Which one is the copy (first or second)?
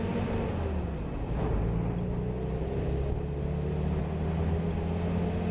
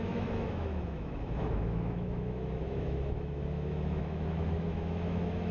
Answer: second